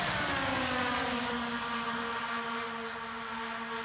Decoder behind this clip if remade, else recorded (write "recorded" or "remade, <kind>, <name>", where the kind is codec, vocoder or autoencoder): recorded